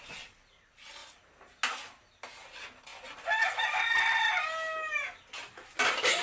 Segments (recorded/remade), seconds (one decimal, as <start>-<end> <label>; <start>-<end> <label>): 0.0-6.2 recorded